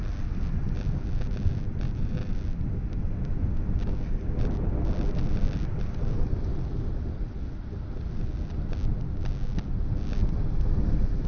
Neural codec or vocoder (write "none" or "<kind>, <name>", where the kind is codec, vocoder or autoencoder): none